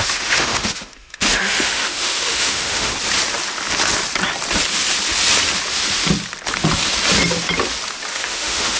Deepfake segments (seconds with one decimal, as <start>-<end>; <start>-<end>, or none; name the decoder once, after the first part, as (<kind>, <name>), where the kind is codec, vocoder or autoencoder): 0.0-2.9 (autoencoder, DAC-VAE); 8.1-8.8